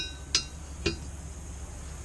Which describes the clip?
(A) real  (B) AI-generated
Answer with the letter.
A